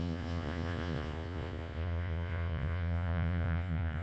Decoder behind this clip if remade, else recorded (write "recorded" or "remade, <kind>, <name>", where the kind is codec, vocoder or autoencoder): remade, vocoder, Vocos